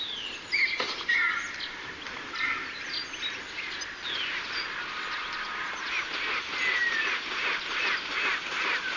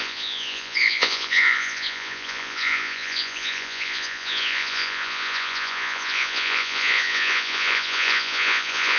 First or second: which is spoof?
second